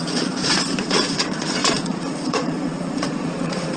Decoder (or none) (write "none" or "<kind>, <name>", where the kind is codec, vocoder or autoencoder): vocoder, Vocos